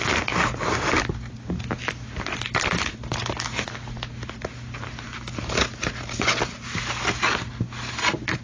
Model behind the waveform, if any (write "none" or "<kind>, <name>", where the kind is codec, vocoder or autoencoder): none